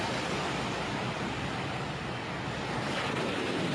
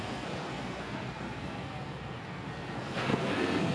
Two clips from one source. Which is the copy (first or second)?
second